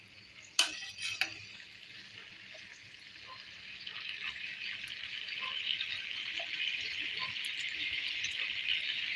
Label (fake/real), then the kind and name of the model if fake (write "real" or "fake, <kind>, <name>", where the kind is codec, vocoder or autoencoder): real